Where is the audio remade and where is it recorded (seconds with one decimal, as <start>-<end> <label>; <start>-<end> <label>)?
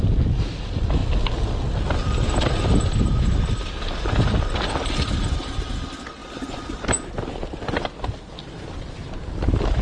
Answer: 0.0-9.8 recorded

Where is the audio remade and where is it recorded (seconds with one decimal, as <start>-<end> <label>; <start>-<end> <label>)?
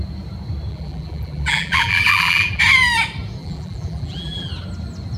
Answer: 0.0-0.7 recorded; 0.7-2.6 remade; 2.6-3.4 recorded; 3.4-4.5 remade; 4.5-5.2 recorded